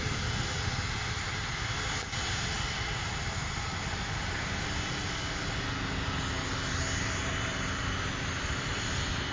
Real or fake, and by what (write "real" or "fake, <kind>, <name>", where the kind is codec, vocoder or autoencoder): real